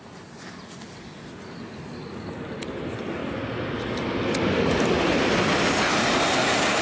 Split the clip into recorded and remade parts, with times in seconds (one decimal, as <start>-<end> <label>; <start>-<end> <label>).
0.0-6.8 recorded